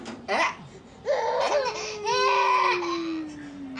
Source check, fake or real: real